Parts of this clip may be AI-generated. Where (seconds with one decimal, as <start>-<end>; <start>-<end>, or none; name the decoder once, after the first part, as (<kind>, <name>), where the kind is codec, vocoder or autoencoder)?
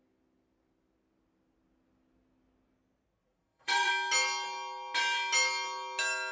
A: 3.2-3.9 (vocoder, Vocos)